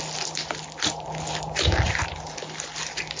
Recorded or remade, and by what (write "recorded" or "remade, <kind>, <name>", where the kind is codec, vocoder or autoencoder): recorded